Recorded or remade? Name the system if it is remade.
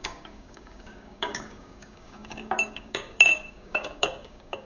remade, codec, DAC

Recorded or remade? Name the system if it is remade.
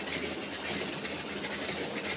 recorded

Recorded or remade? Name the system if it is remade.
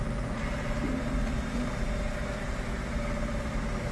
recorded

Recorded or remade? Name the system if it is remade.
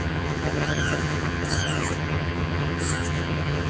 remade, vocoder, HiFi-GAN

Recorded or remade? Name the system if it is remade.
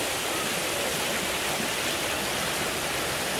recorded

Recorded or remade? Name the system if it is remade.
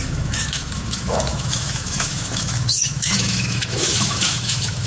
remade, autoencoder, DAC-VAE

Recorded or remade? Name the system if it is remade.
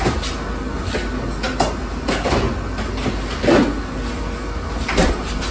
recorded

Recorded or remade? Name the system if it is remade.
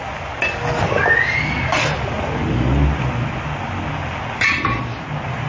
recorded